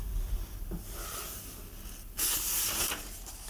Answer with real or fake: real